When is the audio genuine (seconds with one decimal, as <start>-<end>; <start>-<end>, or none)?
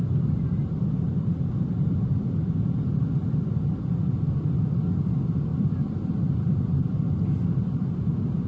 none